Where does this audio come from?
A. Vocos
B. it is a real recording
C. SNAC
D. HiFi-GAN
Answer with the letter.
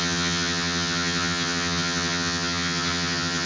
D